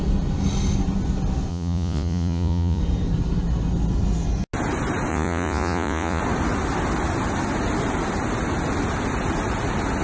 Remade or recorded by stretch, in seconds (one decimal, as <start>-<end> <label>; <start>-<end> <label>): 0.0-1.5 recorded; 1.5-2.8 remade; 2.8-5.1 recorded; 5.1-6.2 remade; 6.2-10.0 recorded